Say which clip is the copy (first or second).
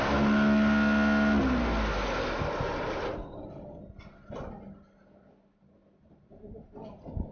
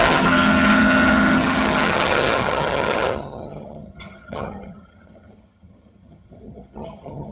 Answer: second